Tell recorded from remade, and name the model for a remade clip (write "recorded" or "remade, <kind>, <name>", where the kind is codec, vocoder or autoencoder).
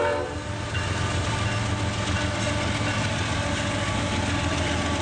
recorded